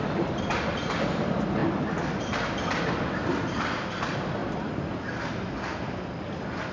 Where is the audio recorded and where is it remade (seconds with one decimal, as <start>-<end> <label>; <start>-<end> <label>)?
0.0-6.7 recorded